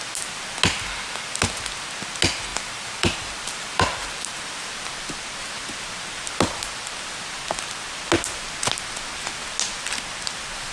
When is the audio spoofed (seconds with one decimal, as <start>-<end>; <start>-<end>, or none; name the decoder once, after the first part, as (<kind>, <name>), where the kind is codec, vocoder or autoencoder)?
2.5-4.4 (vocoder, BigVGAN v2)